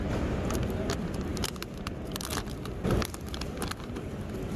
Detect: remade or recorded recorded